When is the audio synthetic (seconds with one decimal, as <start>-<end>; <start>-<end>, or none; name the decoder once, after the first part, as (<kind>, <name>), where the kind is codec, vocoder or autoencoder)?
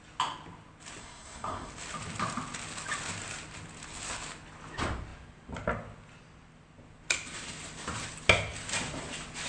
1.0-1.7 (codec, SNAC)